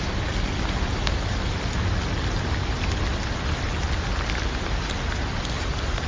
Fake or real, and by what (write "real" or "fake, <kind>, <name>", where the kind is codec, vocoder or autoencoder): real